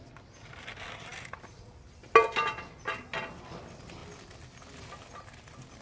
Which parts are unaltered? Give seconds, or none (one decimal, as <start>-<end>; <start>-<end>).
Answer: 0.0-5.8